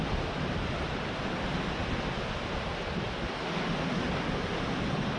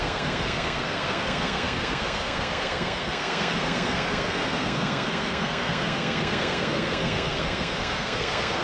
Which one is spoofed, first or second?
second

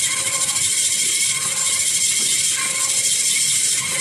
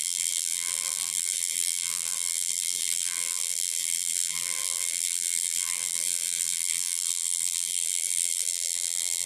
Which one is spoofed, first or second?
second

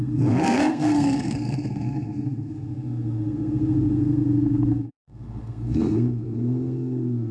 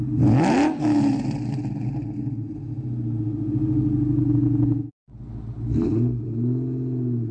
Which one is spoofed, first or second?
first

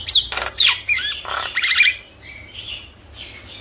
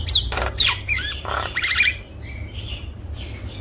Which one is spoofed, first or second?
second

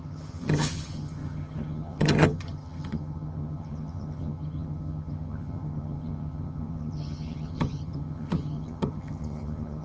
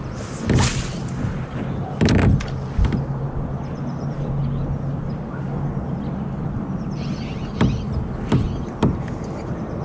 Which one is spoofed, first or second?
first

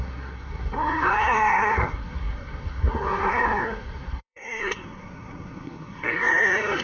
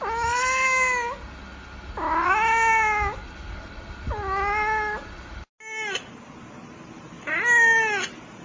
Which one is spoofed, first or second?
first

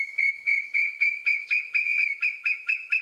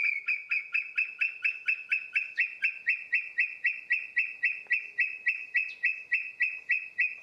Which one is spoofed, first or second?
first